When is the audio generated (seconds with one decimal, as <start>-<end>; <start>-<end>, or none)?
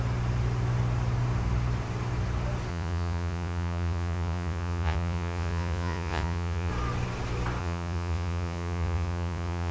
2.7-6.7; 7.6-9.7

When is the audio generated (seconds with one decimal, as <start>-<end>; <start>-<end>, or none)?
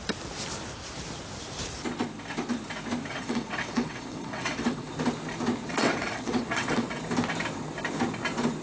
3.1-4.9; 5.6-7.0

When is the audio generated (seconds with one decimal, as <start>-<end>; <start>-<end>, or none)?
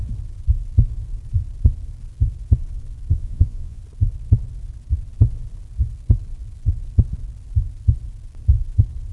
3.1-3.8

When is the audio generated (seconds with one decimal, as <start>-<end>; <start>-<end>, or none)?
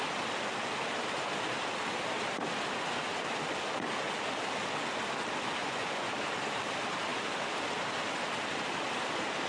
5.6-6.1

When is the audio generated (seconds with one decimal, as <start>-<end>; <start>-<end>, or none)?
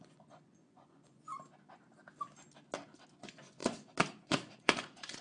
0.0-1.3; 3.2-3.6; 4.2-5.2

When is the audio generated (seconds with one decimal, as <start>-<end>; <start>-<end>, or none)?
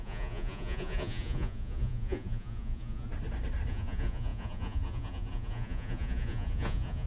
0.0-3.1; 3.7-7.1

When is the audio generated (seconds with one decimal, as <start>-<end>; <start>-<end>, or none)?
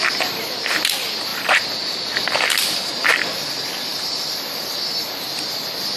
0.0-6.0